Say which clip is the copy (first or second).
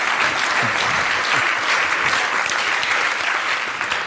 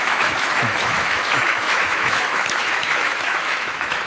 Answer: second